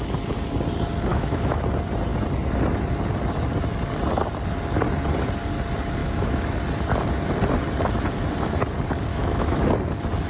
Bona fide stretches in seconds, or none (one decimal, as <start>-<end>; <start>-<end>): 0.0-1.1; 1.6-6.0; 6.6-9.1; 9.7-10.3